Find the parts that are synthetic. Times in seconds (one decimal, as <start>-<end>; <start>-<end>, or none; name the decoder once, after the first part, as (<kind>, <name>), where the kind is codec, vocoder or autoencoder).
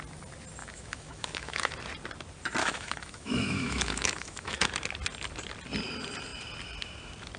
0.6-1.7 (autoencoder, DAC-VAE); 2.6-4.7